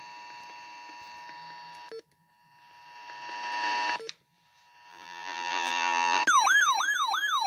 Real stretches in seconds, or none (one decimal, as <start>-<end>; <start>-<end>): 0.0-4.9; 6.2-7.5